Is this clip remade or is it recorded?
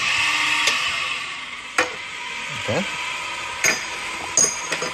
recorded